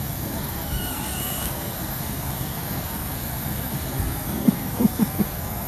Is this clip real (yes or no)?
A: no